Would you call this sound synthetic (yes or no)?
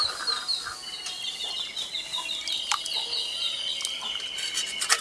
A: no